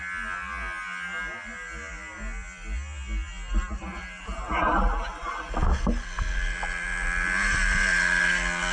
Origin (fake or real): real